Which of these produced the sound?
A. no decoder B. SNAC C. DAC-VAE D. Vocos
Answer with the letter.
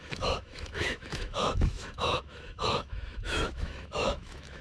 C